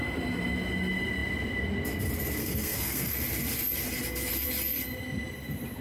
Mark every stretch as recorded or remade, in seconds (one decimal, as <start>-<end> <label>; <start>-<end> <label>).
0.0-2.4 recorded; 2.4-3.1 remade; 3.1-5.8 recorded